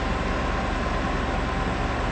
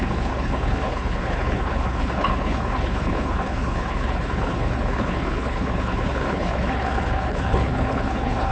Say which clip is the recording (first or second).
first